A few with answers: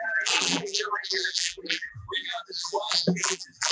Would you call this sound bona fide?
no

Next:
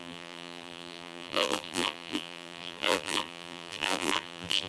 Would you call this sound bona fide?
no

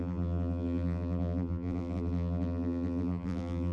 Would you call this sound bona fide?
no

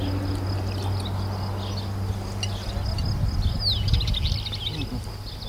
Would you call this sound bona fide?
yes